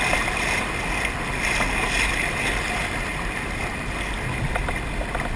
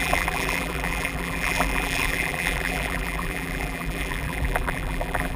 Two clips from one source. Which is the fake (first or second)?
second